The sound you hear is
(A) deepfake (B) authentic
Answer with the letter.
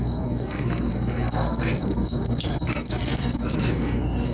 A